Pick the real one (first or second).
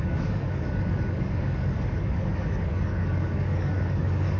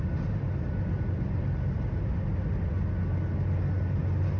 second